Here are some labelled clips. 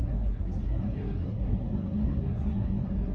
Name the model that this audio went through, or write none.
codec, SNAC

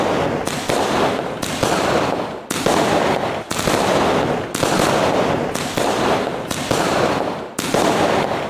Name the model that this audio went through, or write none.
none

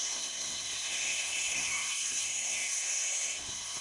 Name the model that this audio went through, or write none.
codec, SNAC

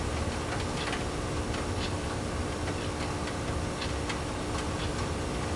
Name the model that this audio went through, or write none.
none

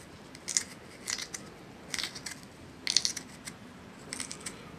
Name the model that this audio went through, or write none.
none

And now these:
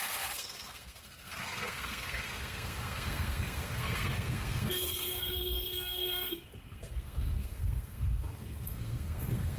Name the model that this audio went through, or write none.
codec, SNAC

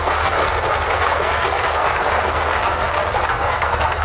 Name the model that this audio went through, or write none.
codec, SNAC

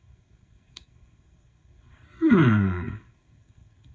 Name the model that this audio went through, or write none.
codec, SNAC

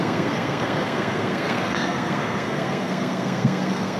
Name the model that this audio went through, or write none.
codec, SNAC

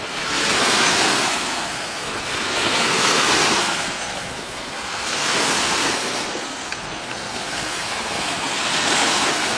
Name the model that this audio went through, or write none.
codec, SNAC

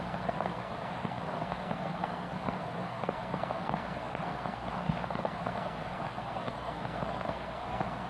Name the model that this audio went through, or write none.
codec, SNAC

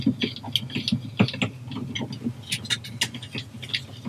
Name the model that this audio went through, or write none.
none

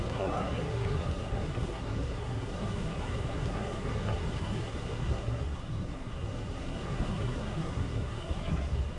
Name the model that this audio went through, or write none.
codec, SNAC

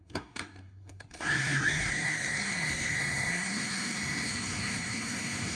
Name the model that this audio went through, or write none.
codec, SNAC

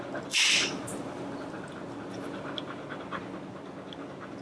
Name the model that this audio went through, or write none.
none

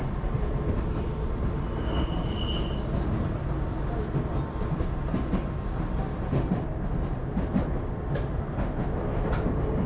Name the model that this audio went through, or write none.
none